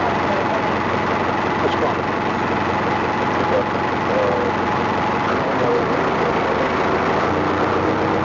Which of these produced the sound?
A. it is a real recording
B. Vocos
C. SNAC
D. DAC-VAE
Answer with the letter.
A